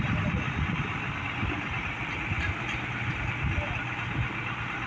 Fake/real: real